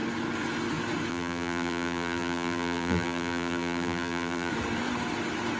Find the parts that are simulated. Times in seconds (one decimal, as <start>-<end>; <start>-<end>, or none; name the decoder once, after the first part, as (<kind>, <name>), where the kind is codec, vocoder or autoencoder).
1.1-4.5 (vocoder, BigVGAN v2)